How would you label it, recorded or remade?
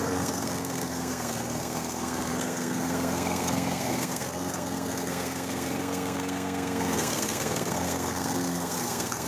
remade